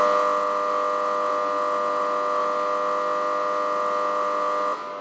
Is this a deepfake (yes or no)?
no